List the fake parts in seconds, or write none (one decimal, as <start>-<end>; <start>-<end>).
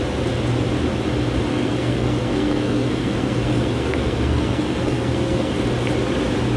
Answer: 1.5-5.5